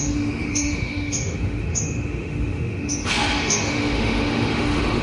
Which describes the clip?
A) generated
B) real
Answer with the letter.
A